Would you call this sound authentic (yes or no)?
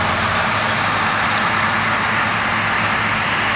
yes